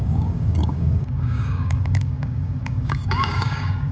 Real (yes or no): no